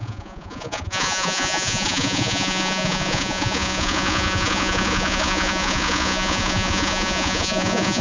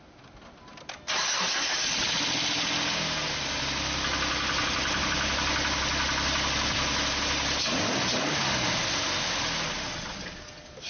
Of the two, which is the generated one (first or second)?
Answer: first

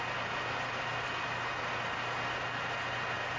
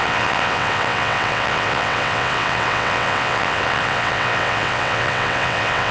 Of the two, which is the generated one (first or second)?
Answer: second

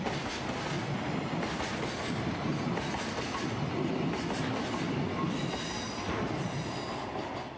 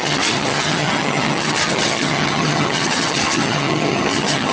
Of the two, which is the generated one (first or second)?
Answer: second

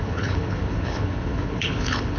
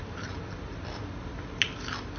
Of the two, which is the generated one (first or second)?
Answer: first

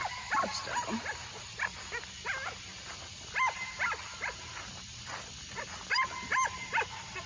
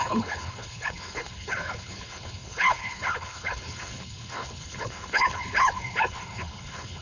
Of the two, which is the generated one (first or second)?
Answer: second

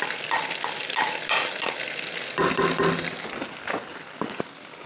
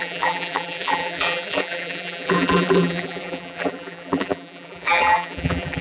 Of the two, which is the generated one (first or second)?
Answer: second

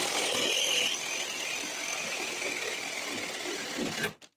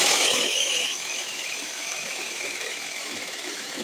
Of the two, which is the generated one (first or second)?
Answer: second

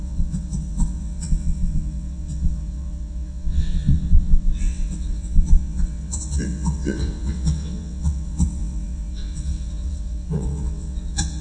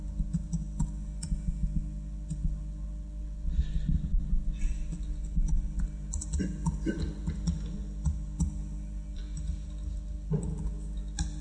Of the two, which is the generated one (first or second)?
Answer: first